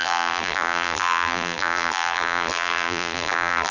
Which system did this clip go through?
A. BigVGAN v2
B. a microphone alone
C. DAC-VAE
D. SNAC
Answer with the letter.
A